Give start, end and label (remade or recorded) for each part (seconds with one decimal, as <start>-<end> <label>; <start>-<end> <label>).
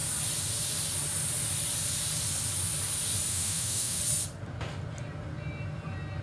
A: 0.0-3.3 recorded; 3.3-4.0 remade; 4.0-6.2 recorded